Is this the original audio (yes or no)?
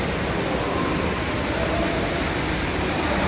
yes